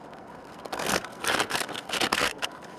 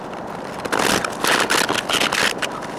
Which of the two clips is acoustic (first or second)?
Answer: second